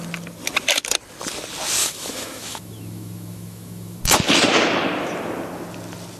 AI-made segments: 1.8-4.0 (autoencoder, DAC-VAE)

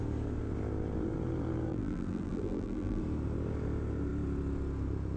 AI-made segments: 1.7-3.0 (vocoder, BigVGAN v2)

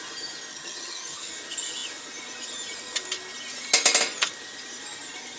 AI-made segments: 0.5-1.3 (vocoder, HiFi-GAN)

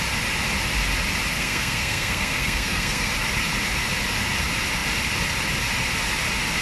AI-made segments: 1.3-3.1 (codec, SNAC)

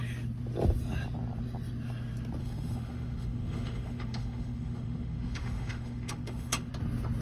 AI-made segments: 2.4-6.7 (autoencoder, DAC-VAE)

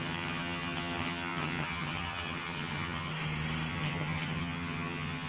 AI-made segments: 0.0-3.1 (vocoder, HiFi-GAN); 3.7-5.3